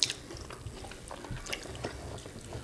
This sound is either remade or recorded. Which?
recorded